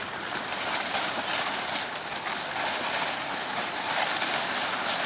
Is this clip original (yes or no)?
yes